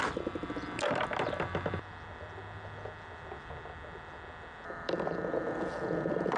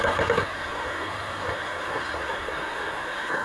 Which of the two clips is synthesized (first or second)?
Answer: second